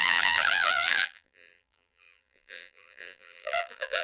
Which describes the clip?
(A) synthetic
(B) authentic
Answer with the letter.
A